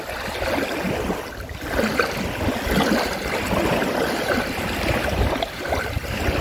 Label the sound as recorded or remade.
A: recorded